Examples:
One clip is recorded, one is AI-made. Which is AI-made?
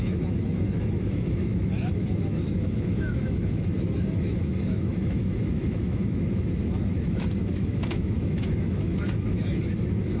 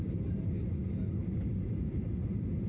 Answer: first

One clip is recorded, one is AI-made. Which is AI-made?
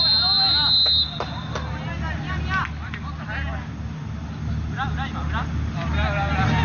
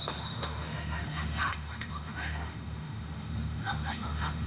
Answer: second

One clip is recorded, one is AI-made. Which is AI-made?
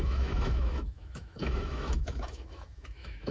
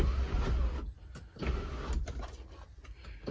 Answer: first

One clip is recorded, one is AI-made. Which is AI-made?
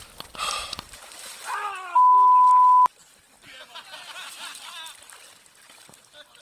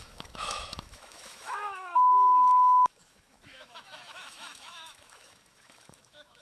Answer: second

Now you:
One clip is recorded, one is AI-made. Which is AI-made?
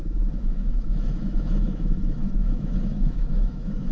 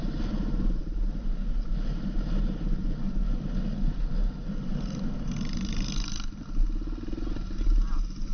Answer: first